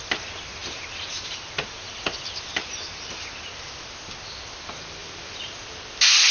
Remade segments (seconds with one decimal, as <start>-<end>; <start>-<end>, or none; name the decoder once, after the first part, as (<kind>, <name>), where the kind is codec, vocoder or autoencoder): 0.6-1.9 (vocoder, BigVGAN v2); 2.5-3.2; 5.0-5.6